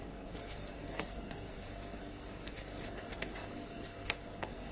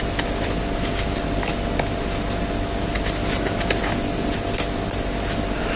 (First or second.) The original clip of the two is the second